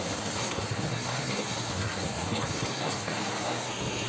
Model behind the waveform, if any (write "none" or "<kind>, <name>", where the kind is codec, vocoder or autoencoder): codec, SNAC